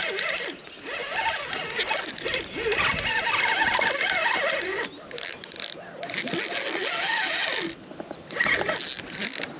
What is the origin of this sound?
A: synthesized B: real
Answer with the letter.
B